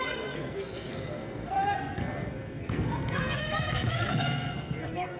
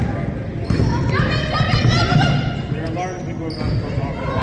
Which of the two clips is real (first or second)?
second